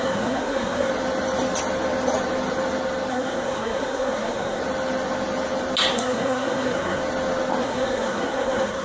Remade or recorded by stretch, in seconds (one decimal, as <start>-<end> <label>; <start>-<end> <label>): 0.0-0.9 remade; 0.9-3.1 recorded; 3.1-4.6 remade; 4.6-5.9 recorded; 5.9-7.0 remade; 7.0-7.6 recorded; 7.6-8.8 remade